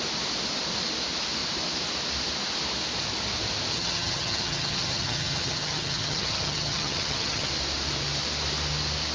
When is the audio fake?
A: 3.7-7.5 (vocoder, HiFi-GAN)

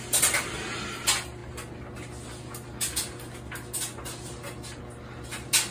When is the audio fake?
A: none

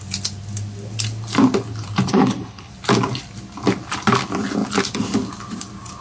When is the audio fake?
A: 2.1-2.7 (codec, HILCodec)